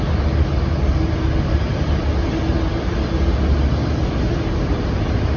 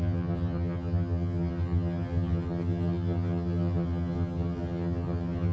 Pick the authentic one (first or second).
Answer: first